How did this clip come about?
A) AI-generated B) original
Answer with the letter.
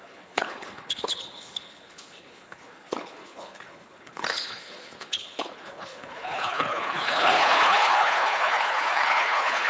A